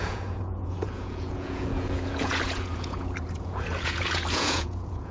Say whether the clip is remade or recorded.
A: remade